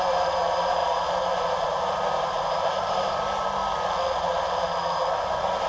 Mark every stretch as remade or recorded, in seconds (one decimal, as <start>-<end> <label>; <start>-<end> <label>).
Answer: 0.0-3.6 remade; 3.6-5.7 recorded